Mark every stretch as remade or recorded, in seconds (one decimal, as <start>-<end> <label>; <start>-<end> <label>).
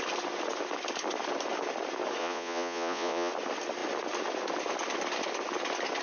0.0-2.2 recorded; 2.2-3.3 remade; 3.3-6.0 recorded